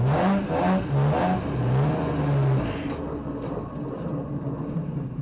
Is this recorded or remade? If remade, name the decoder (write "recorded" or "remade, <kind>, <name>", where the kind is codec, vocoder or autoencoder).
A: recorded